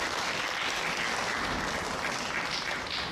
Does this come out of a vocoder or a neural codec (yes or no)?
no